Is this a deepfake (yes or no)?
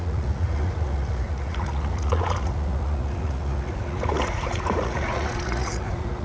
yes